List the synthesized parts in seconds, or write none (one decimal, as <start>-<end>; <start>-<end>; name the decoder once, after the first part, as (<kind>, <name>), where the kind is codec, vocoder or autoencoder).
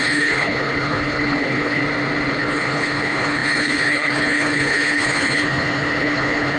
0.0-1.8 (codec, HILCodec); 2.3-6.6